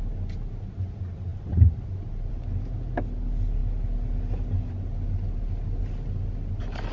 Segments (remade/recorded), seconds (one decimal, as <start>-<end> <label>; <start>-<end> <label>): 0.0-6.9 recorded